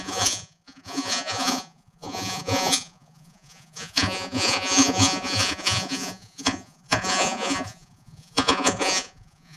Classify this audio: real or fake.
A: fake